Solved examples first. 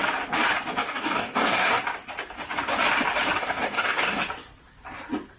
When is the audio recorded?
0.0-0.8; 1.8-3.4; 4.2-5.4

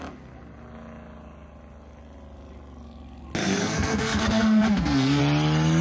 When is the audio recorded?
0.0-3.6; 5.2-5.8